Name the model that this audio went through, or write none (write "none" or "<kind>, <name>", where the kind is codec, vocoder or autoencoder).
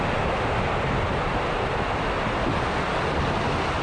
none